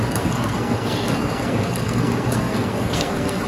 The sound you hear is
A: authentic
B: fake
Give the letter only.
B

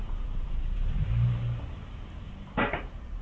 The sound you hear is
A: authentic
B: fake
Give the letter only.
B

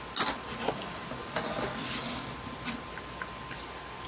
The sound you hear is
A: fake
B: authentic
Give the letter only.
B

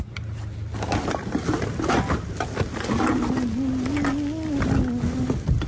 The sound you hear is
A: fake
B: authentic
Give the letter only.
B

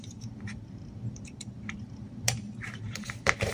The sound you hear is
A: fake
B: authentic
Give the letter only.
A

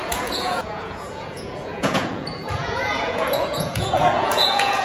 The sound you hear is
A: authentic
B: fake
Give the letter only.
B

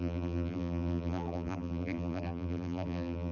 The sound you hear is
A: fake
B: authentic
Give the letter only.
A